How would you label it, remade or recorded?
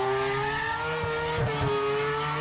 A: recorded